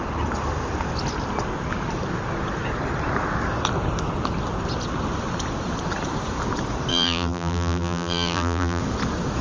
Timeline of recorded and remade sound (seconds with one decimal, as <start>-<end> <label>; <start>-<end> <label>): 0.0-6.9 recorded; 6.9-8.8 remade; 8.8-9.4 recorded